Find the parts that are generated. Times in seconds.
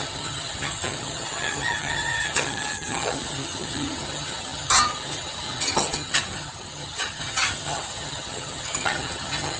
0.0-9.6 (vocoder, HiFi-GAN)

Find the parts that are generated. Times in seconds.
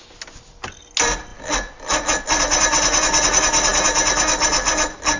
none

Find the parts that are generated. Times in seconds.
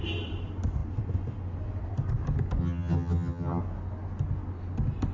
2.6-3.6 (vocoder, HiFi-GAN)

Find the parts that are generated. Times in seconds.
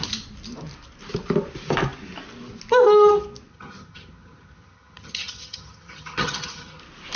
3.5-6.8 (vocoder, HiFi-GAN)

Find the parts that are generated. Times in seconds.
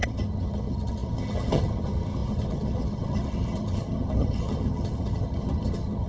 0.0-6.1 (vocoder, HiFi-GAN)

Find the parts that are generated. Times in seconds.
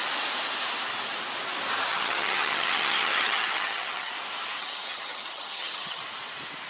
1.9-4.1 (vocoder, HiFi-GAN); 4.6-6.0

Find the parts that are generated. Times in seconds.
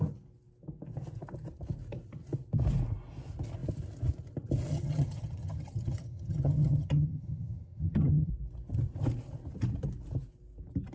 4.7-8.3 (vocoder, HiFi-GAN)